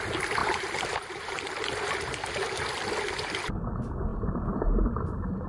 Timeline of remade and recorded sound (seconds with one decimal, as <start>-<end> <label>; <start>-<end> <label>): 0.0-0.4 recorded; 0.4-1.4 remade; 1.4-4.1 recorded; 4.1-5.5 remade